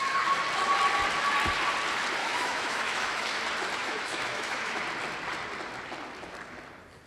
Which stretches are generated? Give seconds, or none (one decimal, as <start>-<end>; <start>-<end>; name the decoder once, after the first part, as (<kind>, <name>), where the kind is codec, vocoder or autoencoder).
2.2-3.4 (autoencoder, DAC-VAE); 3.8-4.8